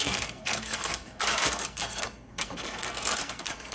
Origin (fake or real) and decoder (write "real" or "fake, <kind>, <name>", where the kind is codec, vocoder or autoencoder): fake, codec, SNAC